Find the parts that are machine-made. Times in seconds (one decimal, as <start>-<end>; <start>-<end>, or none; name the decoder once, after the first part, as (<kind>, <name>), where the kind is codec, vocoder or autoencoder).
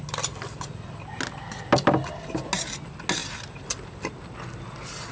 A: none